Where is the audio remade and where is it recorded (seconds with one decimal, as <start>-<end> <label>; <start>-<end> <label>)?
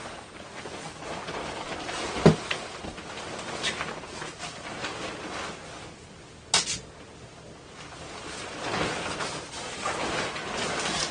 0.0-11.1 recorded